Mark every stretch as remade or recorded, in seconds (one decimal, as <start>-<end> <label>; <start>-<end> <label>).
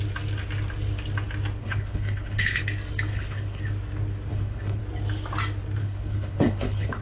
0.0-1.6 recorded; 1.6-2.6 remade; 2.6-3.1 recorded; 3.1-3.6 remade; 3.6-4.3 recorded; 4.3-4.8 remade; 4.8-5.8 recorded; 5.8-7.0 remade